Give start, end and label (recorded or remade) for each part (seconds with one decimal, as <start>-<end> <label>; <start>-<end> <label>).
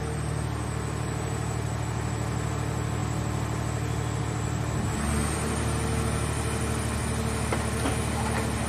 0.0-8.7 recorded